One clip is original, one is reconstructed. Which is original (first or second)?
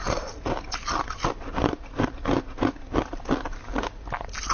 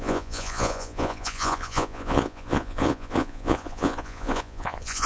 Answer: first